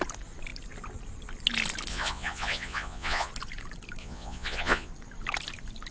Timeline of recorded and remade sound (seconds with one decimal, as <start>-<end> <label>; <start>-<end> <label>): 0.0-1.9 recorded; 1.9-3.3 remade; 3.3-4.0 recorded; 4.0-4.9 remade; 4.9-5.9 recorded